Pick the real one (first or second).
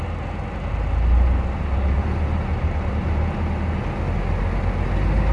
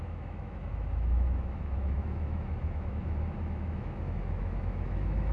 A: first